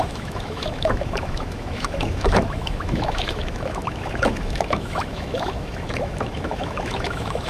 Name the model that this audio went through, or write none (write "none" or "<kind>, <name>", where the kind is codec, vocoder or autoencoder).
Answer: autoencoder, DAC-VAE